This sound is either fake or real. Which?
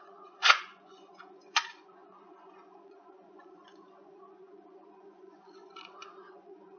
fake